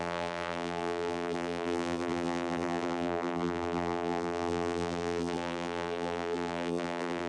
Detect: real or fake fake